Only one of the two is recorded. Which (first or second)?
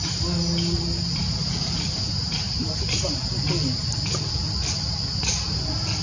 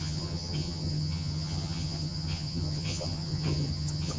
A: first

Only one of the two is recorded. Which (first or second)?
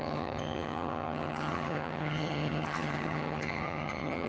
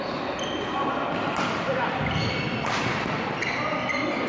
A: second